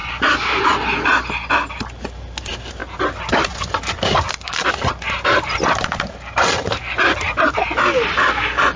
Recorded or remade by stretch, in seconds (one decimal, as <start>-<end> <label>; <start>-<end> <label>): 0.0-0.7 remade; 0.7-8.8 recorded